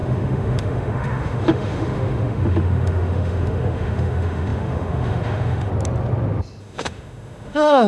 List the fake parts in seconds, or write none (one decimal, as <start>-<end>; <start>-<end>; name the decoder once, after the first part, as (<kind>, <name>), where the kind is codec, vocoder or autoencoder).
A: 0.0-5.7 (autoencoder, DAC-VAE); 6.6-7.9